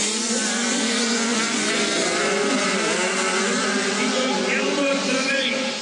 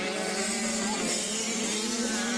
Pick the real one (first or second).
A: second